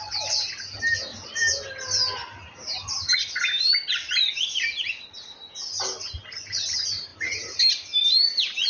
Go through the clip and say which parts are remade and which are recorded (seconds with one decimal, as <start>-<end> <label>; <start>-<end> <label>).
0.0-8.7 recorded